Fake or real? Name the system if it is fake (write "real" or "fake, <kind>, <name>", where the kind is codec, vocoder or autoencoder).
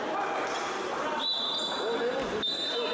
real